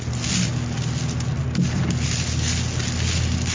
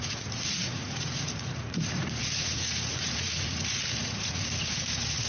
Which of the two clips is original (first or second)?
first